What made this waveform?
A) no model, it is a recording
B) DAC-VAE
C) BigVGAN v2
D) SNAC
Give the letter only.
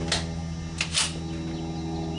A